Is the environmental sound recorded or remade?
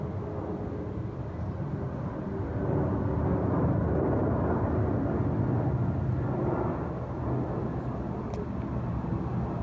recorded